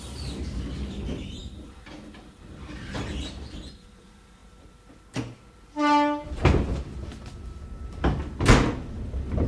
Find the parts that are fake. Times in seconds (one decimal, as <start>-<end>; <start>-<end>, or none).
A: none